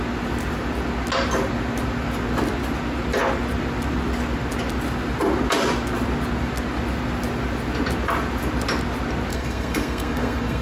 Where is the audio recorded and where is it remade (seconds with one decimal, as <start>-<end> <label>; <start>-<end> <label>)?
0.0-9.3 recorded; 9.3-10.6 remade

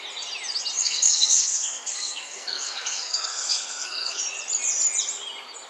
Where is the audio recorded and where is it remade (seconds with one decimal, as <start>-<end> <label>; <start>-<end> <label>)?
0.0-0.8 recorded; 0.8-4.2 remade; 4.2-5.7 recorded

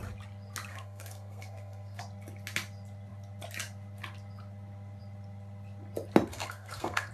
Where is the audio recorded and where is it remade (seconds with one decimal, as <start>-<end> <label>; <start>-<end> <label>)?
0.0-0.7 recorded; 0.7-2.0 remade; 2.0-6.3 recorded; 6.3-7.1 remade

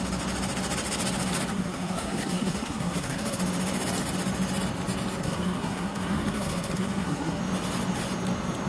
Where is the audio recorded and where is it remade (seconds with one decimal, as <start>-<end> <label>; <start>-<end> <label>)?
0.0-1.5 recorded; 1.5-3.4 remade; 3.4-5.2 recorded; 5.2-7.4 remade; 7.4-8.7 recorded